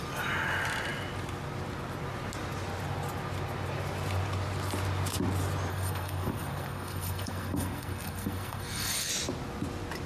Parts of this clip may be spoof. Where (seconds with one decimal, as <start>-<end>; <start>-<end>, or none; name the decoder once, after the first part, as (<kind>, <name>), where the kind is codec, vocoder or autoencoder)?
5.7-9.1 (codec, SNAC)